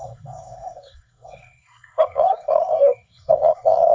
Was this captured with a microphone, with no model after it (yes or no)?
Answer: no